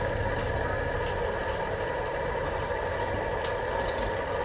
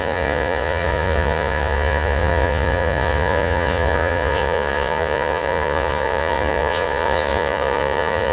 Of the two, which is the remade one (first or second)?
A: second